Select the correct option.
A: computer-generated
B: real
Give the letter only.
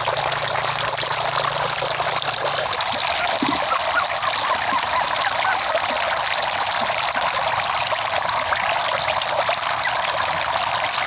B